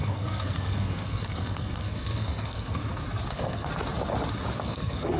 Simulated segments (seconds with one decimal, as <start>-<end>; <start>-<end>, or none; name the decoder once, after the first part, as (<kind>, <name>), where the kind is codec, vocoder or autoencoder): 0.0-2.8 (codec, SNAC); 3.3-3.7; 4.6-5.2